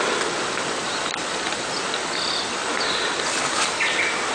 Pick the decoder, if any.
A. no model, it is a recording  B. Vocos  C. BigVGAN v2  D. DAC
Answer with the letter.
A